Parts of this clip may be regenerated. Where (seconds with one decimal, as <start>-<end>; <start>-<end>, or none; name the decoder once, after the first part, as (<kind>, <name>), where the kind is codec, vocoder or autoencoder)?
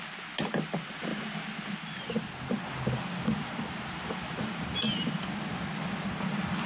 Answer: none